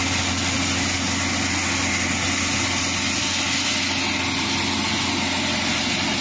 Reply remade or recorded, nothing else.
recorded